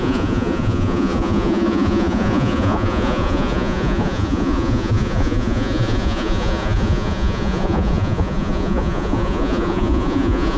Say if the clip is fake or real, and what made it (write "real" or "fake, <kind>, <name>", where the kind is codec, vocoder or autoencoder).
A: fake, vocoder, Vocos